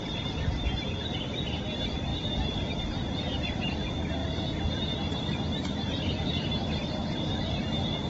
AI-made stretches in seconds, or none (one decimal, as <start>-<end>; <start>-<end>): 2.1-3.1; 5.3-7.4

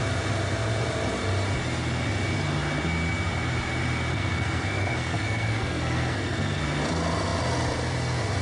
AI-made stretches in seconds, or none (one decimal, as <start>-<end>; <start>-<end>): 4.1-6.6

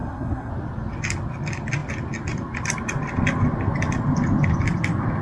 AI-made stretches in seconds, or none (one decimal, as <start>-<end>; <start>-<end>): 0.0-0.5

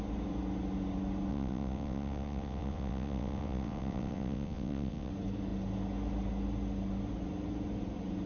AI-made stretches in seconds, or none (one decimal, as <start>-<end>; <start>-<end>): 1.3-5.1